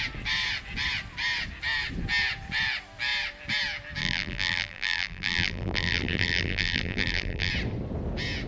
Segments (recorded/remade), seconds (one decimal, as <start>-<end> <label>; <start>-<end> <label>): 0.0-4.0 recorded; 4.0-7.5 remade; 7.5-8.5 recorded